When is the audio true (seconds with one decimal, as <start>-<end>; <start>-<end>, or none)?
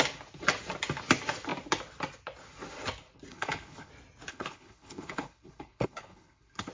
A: 0.0-3.3; 3.9-4.3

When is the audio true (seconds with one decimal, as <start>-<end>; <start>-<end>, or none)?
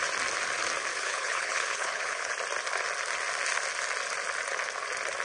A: 0.0-0.9; 2.3-5.2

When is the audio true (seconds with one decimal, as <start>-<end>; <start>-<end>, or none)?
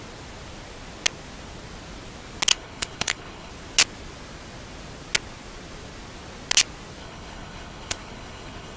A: 0.0-2.5; 3.5-7.0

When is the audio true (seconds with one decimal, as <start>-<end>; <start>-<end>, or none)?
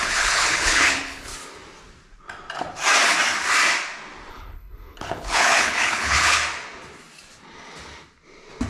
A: 1.3-4.3; 6.4-8.7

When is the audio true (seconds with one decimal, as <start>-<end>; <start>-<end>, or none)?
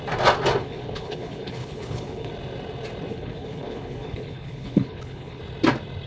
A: 0.0-0.6; 2.3-3.1; 5.4-6.1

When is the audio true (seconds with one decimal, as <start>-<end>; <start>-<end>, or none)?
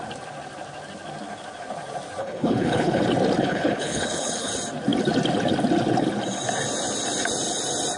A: 0.0-2.2; 3.0-3.4; 4.5-8.0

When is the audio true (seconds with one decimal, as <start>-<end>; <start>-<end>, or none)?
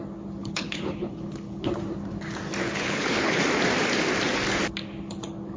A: 0.0-0.4; 1.7-2.6; 3.4-5.6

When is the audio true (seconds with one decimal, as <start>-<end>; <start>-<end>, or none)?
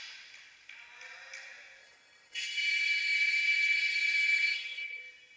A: 0.0-1.8; 5.0-5.4